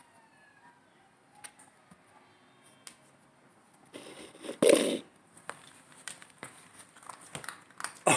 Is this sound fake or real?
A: real